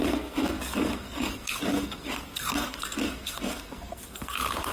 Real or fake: fake